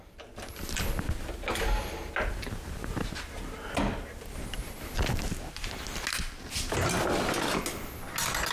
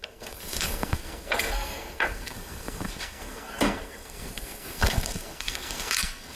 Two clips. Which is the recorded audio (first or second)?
first